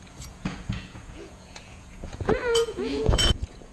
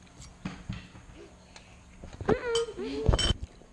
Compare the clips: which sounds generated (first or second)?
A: first